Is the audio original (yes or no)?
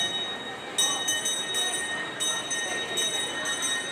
yes